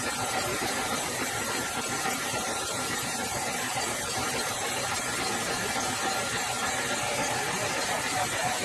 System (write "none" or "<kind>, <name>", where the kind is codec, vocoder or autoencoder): vocoder, BigVGAN v2